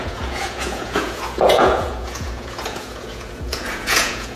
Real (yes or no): no